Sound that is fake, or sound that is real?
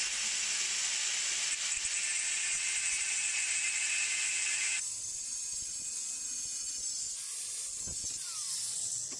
real